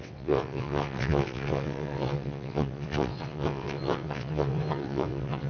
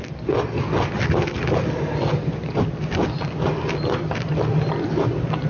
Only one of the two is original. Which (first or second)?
second